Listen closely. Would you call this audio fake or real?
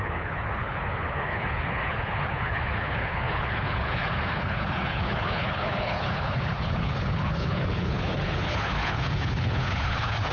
fake